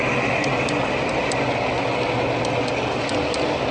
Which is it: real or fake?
real